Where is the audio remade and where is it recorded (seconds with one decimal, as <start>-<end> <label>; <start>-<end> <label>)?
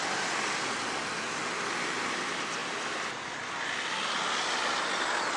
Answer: 0.0-5.4 recorded